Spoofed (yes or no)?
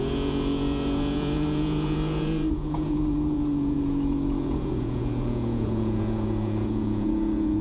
yes